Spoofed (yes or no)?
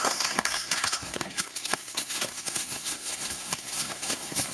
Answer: yes